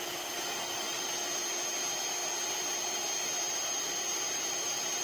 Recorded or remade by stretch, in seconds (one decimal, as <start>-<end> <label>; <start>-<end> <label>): 0.0-5.0 recorded